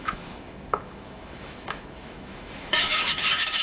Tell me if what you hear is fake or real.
fake